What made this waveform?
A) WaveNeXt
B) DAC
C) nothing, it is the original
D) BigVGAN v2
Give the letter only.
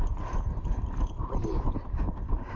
C